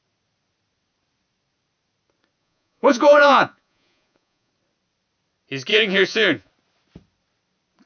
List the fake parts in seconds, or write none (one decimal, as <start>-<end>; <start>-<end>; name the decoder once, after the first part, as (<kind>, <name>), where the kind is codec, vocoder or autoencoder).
2.4-4.5 (vocoder, Vocos); 5.7-6.5